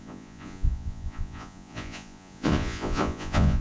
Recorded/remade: remade